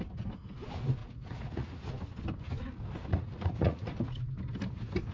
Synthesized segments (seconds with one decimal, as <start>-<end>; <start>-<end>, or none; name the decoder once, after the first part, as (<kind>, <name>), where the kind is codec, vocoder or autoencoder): 1.0-1.8 (vocoder, Vocos); 3.1-3.9

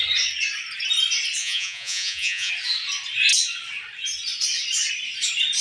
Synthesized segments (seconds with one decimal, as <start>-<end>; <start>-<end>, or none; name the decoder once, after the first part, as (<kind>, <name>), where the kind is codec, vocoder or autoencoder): 1.4-2.5 (vocoder, Vocos)

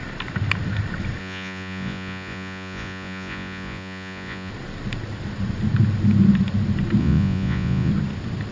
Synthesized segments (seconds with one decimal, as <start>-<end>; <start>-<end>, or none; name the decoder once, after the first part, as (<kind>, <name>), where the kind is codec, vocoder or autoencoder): 1.2-4.5 (vocoder, Vocos); 7.0-7.9